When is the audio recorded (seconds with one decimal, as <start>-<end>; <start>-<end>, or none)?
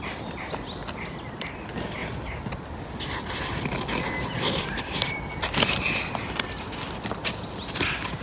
0.0-8.2